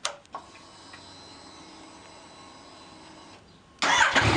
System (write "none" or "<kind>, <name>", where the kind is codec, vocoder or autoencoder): none